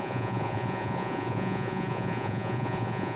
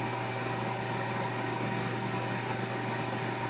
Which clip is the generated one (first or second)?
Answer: first